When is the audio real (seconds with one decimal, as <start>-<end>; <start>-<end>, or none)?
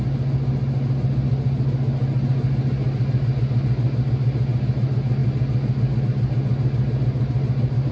0.0-7.9